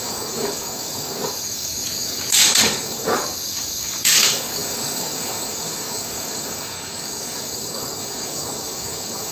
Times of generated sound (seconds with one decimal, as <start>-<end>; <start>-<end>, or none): 0.0-9.3

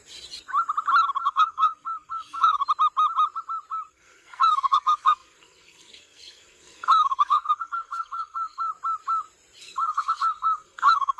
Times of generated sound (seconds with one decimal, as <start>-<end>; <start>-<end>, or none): 1.2-2.6; 3.9-8.7; 9.6-11.2

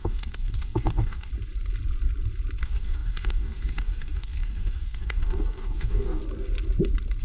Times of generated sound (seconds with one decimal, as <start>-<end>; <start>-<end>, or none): 0.0-1.3; 2.6-6.2